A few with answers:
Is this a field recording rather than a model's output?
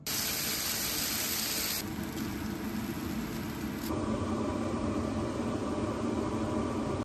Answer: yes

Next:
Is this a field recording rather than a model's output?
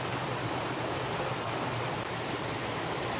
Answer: yes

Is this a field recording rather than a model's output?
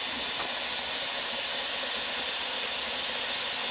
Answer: yes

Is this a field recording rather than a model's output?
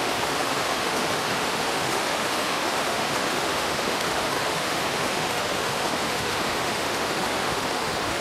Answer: no